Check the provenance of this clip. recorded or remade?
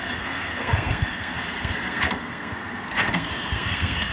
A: remade